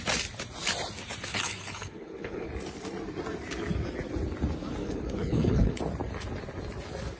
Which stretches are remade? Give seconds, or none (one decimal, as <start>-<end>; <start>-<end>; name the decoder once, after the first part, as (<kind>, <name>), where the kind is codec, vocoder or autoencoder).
1.3-2.5 (codec, HILCodec); 4.8-5.8